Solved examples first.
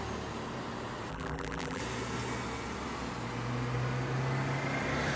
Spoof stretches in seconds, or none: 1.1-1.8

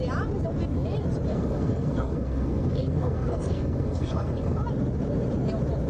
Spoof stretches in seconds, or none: 1.3-4.6

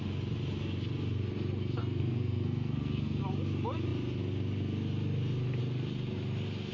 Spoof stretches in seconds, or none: 1.8-3.2

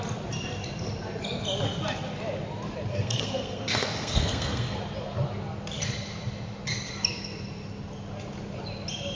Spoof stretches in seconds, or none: 2.9-4.8

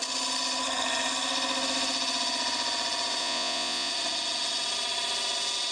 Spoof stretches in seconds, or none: 3.2-3.9